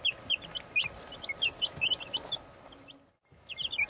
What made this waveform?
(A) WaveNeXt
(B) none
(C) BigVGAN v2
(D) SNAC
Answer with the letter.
B